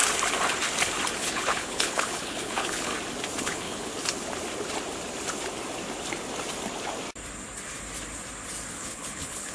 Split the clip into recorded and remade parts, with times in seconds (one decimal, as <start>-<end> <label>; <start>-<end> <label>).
0.0-1.2 recorded; 1.2-2.9 remade; 2.9-3.4 recorded; 3.4-3.9 remade; 3.9-8.7 recorded; 8.7-9.5 remade